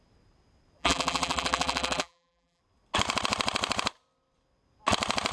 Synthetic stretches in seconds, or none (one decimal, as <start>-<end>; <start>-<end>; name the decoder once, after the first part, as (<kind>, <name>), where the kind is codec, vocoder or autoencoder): 0.8-2.6 (vocoder, BigVGAN v2)